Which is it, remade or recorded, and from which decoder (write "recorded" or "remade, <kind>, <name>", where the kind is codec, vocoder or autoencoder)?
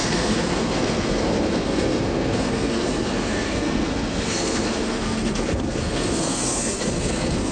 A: remade, codec, SNAC